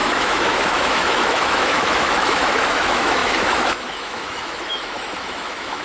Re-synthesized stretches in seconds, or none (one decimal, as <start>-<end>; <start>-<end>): 0.0-5.8